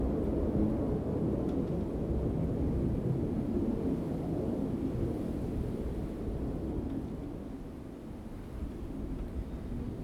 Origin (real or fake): real